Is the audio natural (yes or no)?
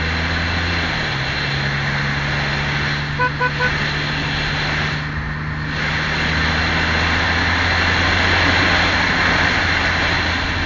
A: yes